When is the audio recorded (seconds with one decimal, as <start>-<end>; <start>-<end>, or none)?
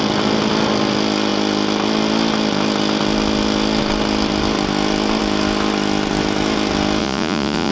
0.0-7.0